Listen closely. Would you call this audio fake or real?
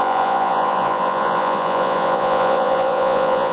fake